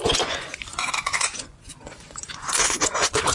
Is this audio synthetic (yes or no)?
yes